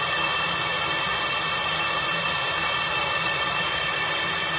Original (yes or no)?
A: yes